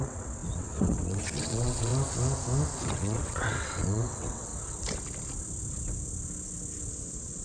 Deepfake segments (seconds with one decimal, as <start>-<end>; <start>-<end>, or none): 0.0-1.9; 2.8-4.5; 6.9-7.4